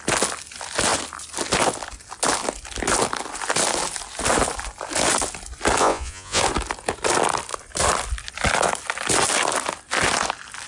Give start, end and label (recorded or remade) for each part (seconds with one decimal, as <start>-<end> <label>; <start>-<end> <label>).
0.0-5.8 recorded; 5.8-6.4 remade; 6.4-10.7 recorded